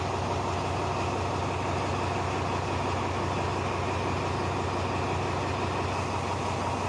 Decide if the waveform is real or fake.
real